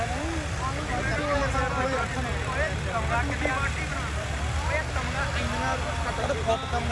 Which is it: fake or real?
real